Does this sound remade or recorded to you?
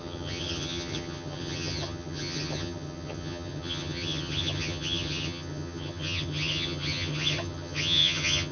remade